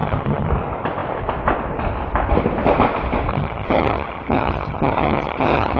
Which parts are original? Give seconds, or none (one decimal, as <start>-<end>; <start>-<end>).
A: 0.5-3.3